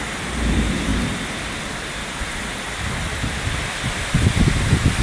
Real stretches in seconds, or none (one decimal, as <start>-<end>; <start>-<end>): 0.0-5.0